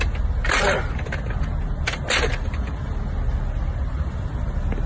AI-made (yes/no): no